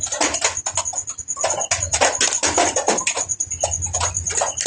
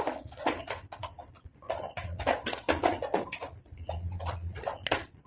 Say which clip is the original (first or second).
first